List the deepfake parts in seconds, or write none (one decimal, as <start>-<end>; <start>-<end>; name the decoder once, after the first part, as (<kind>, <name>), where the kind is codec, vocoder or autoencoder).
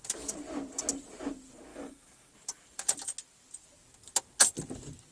1.7-2.3 (codec, DAC)